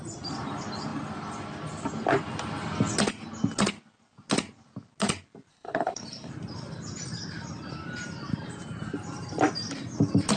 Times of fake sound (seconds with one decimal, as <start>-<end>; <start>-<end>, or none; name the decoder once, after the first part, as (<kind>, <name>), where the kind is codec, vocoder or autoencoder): 5.5-6.3 (codec, HILCodec)